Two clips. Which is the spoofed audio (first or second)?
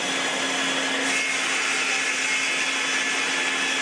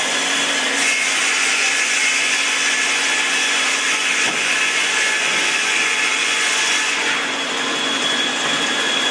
second